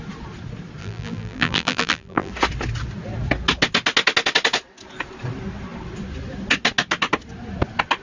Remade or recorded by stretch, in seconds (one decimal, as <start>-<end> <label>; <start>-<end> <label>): 0.0-0.8 recorded; 0.8-2.3 remade; 2.3-8.0 recorded